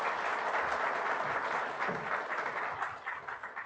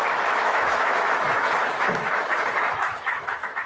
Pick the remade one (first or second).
second